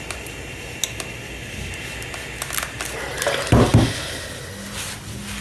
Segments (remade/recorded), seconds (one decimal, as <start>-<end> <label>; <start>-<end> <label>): 0.0-5.4 recorded